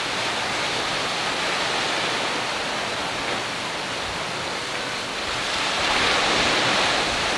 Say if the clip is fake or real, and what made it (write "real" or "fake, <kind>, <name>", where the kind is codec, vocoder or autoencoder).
real